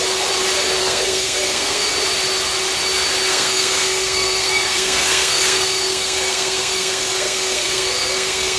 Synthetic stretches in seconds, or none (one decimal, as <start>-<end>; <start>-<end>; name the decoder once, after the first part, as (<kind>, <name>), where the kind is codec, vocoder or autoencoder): 0.8-1.9 (codec, SNAC); 3.3-8.6

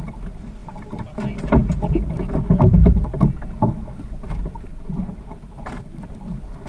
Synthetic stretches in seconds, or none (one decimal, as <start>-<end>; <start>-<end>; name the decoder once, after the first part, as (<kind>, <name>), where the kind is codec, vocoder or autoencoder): 4.7-6.0 (vocoder, BigVGAN v2)

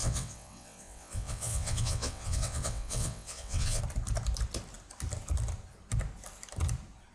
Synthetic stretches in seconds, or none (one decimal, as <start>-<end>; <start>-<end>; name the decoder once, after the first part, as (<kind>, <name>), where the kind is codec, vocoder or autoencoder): 0.0-3.8 (vocoder, WaveNeXt)

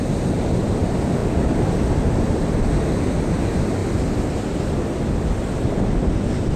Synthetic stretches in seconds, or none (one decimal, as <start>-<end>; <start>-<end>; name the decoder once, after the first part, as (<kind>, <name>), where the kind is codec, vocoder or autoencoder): none

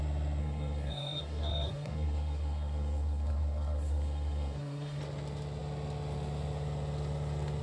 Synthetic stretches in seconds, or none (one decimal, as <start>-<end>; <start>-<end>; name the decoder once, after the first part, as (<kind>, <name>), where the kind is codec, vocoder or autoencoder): 0.4-5.0 (codec, SNAC)

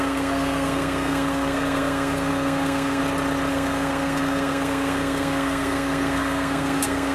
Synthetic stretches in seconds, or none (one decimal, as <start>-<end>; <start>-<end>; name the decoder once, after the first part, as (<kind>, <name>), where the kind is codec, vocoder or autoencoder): 0.0-3.0 (codec, SNAC); 3.5-7.1

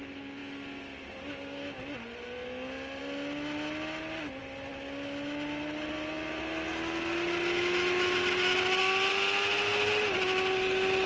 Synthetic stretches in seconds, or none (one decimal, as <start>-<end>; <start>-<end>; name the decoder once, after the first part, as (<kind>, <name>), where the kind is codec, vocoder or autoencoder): none